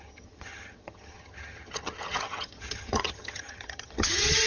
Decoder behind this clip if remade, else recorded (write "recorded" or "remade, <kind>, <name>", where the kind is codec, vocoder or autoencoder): remade, vocoder, HiFi-GAN